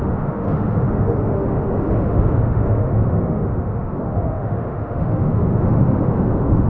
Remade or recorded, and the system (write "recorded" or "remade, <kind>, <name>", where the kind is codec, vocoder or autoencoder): remade, autoencoder, DAC-VAE